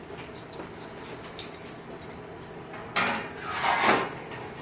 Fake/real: real